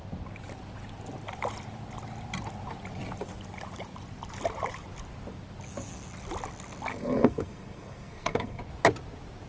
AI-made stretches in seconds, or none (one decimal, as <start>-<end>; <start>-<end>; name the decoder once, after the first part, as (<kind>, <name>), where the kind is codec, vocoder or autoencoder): 6.9-8.6 (codec, SNAC)